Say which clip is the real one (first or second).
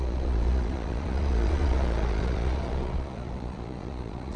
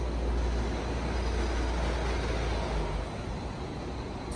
second